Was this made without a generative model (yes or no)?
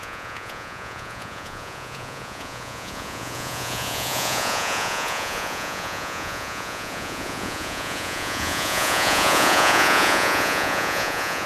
no